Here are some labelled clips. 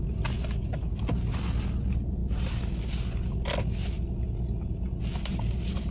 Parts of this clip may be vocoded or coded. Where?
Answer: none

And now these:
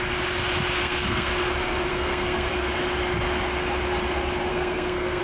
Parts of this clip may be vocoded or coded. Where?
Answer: 0.8-1.3 (codec, SNAC); 1.9-2.5; 4.5-5.2

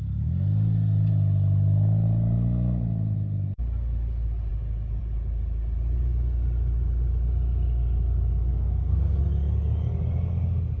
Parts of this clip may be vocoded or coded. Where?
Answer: 8.5-9.2 (codec, SNAC)

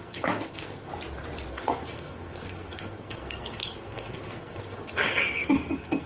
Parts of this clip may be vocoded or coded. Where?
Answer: 0.0-0.9 (codec, SNAC); 1.5-6.1

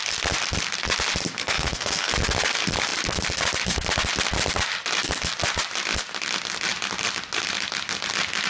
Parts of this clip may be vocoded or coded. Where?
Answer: 1.4-2.1 (codec, SNAC)

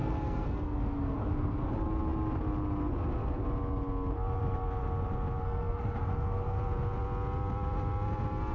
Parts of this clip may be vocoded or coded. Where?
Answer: 0.0-1.7 (codec, SNAC); 5.4-6.6